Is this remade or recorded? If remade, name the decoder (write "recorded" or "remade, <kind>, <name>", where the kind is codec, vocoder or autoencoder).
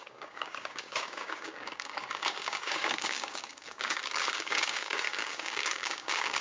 remade, codec, DAC